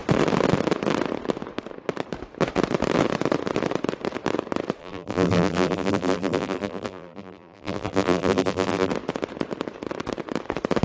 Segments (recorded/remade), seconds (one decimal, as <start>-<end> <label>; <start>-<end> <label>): 0.0-4.8 recorded; 4.8-8.9 remade; 8.9-10.8 recorded